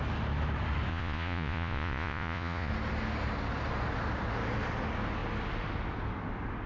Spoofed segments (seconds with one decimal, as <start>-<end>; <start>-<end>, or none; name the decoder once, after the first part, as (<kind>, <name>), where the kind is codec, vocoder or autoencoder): 0.9-2.7 (vocoder, Vocos)